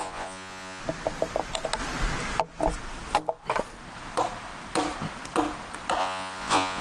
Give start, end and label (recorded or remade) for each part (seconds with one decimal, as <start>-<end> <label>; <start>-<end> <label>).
0.0-0.8 remade; 0.8-6.0 recorded; 6.0-6.8 remade